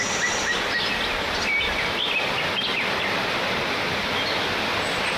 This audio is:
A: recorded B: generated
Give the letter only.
A